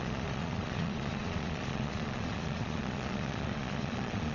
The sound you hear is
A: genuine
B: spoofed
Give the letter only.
B